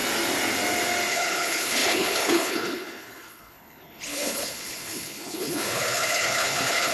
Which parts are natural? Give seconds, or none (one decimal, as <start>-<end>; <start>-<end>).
0.0-1.1